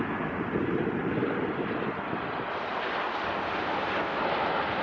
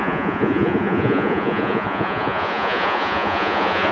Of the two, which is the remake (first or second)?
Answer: second